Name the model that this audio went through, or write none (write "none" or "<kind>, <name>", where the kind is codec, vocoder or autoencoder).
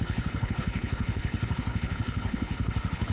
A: codec, HILCodec